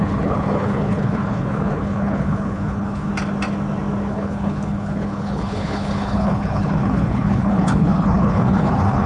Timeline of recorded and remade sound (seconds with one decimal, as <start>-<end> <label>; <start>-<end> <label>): 0.0-3.1 remade; 3.1-4.1 recorded; 4.1-9.1 remade